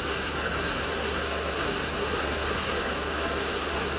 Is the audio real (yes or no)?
no